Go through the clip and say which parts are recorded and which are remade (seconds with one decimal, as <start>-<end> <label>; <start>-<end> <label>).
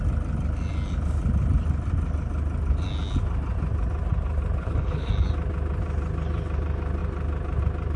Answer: 0.0-4.6 recorded; 4.6-5.1 remade; 5.1-8.0 recorded